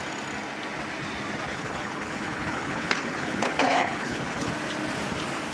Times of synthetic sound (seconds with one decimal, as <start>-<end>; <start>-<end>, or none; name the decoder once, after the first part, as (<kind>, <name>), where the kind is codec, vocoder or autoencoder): 1.5-4.5 (codec, HILCodec)